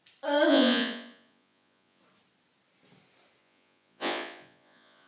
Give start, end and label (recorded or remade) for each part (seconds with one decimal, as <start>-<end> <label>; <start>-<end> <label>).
0.0-0.5 recorded; 0.5-2.0 remade; 2.0-3.4 recorded; 3.4-5.1 remade